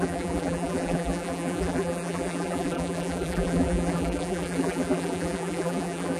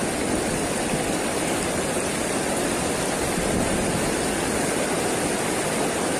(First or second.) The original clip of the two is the second